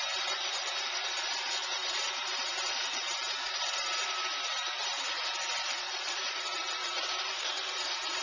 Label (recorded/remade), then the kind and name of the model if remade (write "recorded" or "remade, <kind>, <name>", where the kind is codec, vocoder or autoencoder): remade, vocoder, BigVGAN v2